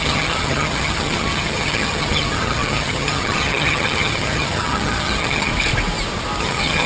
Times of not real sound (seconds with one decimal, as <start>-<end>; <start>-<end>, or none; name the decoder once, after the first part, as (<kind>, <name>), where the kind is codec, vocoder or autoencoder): 0.0-5.5 (vocoder, HiFi-GAN); 6.4-6.9